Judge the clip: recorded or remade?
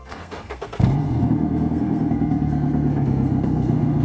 remade